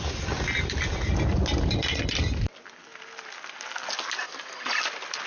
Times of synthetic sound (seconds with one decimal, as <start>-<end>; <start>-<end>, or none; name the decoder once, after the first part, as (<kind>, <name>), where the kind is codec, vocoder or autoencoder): none